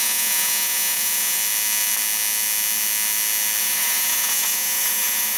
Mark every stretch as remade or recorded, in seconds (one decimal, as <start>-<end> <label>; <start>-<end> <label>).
0.0-1.4 remade; 1.4-3.6 recorded; 3.6-5.4 remade

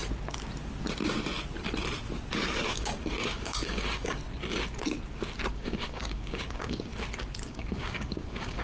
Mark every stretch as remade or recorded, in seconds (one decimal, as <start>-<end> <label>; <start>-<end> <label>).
0.0-2.7 recorded; 2.7-4.2 remade; 4.2-5.5 recorded; 5.5-6.9 remade; 6.9-7.5 recorded; 7.5-8.6 remade

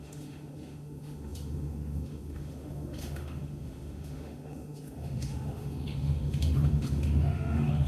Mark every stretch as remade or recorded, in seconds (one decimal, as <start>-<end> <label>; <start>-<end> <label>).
0.0-7.9 remade

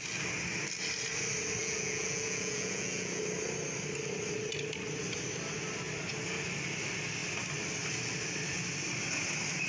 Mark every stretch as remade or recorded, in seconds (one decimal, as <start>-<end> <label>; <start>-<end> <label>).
0.0-1.6 recorded; 1.6-3.2 remade; 3.2-9.7 recorded

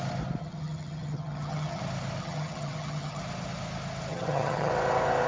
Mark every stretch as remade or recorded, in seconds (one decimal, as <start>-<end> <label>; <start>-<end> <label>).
0.0-0.4 recorded; 0.4-1.8 remade; 1.8-2.2 recorded; 2.2-3.2 remade; 3.2-4.1 recorded; 4.1-4.7 remade; 4.7-5.3 recorded